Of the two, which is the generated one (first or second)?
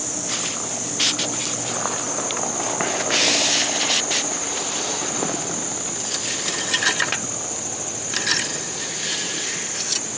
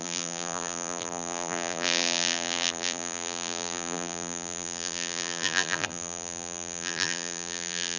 second